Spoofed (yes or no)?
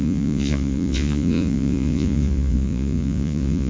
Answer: yes